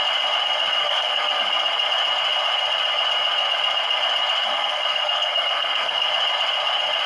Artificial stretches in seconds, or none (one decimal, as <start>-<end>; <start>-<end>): 0.8-1.4; 4.4-6.0